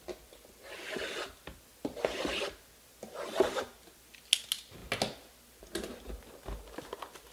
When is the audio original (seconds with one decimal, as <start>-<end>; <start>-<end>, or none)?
0.0-7.3